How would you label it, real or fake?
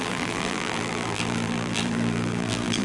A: fake